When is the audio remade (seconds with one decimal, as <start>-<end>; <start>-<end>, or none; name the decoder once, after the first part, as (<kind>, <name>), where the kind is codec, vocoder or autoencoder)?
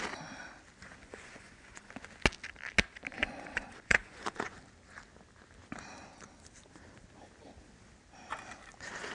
1.0-1.9 (vocoder, Vocos); 3.1-4.6